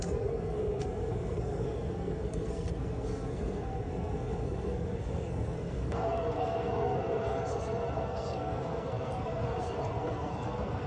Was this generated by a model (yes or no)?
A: yes